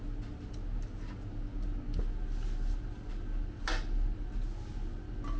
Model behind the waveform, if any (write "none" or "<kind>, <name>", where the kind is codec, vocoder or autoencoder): none